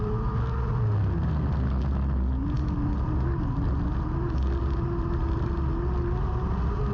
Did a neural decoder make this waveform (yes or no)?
no